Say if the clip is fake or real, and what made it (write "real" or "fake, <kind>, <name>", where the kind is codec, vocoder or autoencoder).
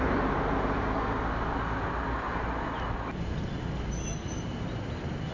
real